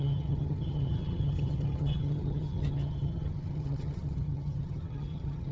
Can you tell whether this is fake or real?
fake